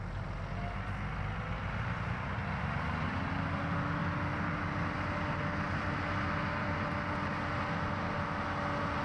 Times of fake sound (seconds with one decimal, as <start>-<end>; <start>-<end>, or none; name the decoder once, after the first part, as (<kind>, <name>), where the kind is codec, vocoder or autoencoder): none